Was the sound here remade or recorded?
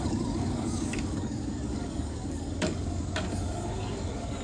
remade